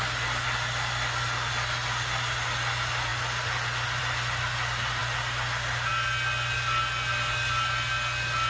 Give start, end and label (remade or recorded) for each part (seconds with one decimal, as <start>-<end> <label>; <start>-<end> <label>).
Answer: 0.0-8.5 recorded